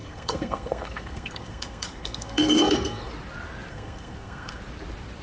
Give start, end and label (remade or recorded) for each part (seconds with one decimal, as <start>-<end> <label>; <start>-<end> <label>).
0.0-3.1 remade; 3.1-3.7 recorded; 3.7-4.6 remade; 4.6-5.2 recorded